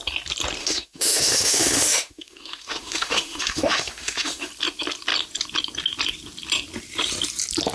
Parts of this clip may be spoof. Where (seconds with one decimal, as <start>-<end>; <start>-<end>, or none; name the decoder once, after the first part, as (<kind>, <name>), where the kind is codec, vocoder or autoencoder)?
0.6-4.5 (autoencoder, DAC-VAE)